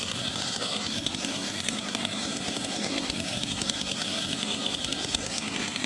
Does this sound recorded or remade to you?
remade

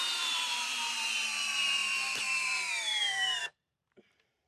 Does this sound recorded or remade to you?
remade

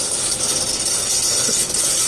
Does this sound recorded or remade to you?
recorded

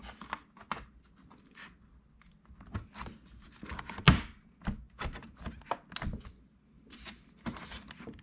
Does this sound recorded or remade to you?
recorded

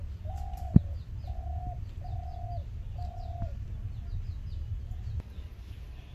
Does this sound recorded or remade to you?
recorded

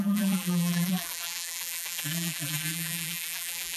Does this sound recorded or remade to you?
remade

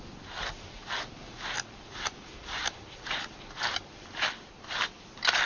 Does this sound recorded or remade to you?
recorded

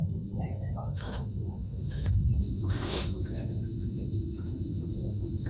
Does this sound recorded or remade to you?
remade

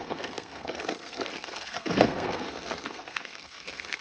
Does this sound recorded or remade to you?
remade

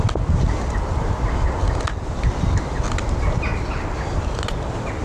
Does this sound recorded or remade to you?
recorded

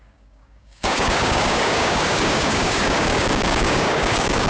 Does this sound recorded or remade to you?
remade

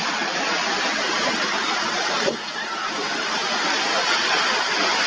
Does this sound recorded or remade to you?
recorded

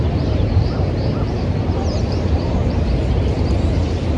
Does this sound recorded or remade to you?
remade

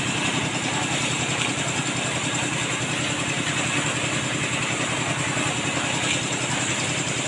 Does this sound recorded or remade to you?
recorded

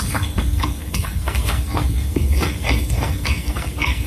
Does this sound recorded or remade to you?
remade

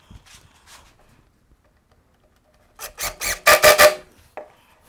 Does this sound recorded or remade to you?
recorded